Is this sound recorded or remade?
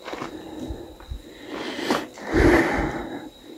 recorded